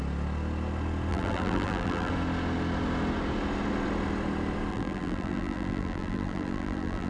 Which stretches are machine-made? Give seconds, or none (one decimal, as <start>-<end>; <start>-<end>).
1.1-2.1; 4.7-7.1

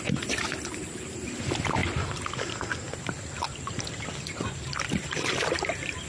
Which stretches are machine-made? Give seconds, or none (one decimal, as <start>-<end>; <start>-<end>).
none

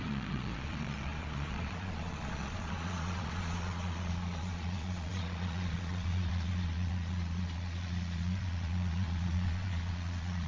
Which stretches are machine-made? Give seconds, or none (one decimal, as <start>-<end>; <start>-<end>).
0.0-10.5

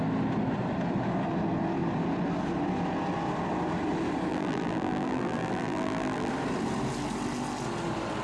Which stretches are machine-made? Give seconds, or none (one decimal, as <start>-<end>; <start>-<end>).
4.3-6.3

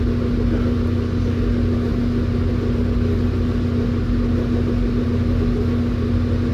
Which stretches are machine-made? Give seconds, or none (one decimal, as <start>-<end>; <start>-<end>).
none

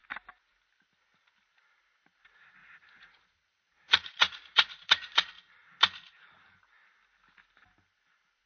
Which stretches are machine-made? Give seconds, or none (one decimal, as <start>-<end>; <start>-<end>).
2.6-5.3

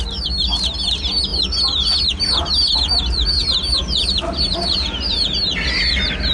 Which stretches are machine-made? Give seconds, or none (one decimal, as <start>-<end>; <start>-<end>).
none

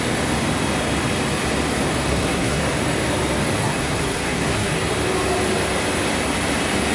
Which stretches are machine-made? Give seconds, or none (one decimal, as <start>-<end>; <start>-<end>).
2.1-2.6; 3.6-4.7